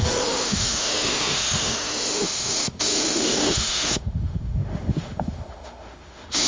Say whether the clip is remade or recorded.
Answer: remade